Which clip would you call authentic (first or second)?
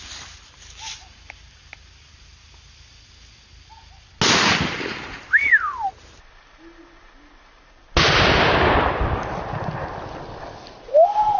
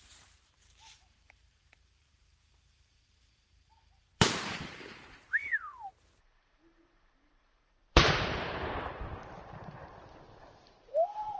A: first